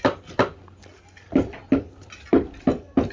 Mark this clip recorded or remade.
recorded